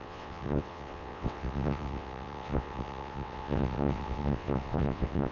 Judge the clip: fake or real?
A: fake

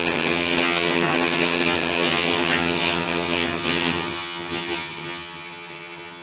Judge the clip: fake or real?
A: fake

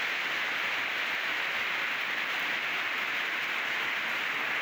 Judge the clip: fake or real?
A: real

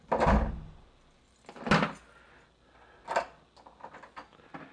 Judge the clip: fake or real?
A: real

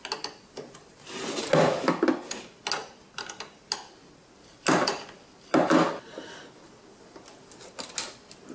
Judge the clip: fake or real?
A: real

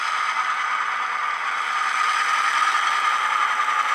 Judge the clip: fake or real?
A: real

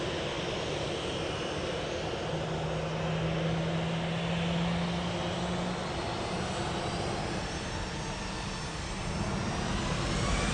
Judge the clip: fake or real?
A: real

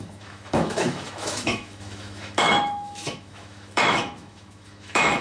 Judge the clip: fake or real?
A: fake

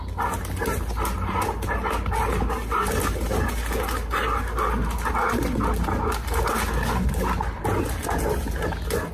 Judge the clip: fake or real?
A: real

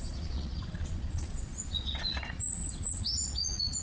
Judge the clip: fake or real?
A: fake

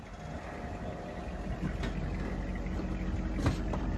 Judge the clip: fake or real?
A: real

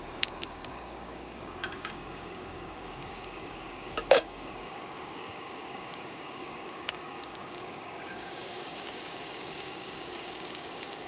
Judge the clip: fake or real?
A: fake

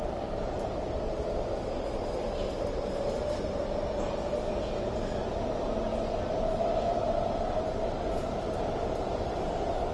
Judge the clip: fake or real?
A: real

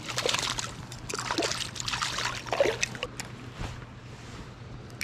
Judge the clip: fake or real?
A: real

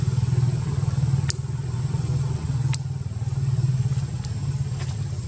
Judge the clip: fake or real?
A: real